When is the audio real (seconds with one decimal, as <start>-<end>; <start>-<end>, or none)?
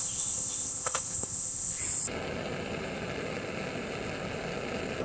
1.8-5.0